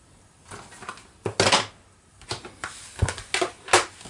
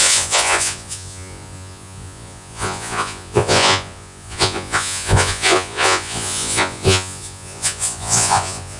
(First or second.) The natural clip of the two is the first